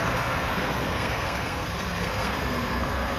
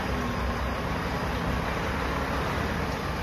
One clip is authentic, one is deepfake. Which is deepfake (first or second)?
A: first